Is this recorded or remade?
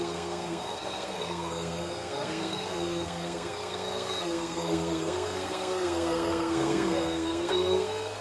remade